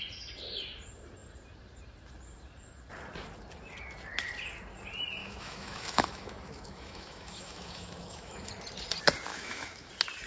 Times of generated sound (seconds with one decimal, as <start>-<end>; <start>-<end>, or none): 5.2-8.5; 9.3-9.9